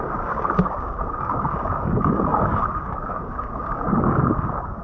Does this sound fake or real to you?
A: fake